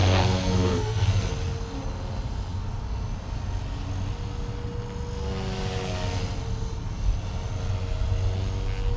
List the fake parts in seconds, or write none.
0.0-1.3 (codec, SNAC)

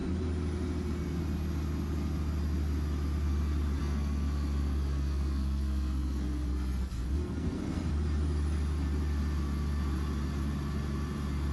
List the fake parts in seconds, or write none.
3.8-7.9 (codec, SNAC)

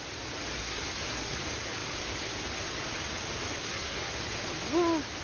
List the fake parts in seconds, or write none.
0.6-1.4 (codec, SNAC); 3.6-4.1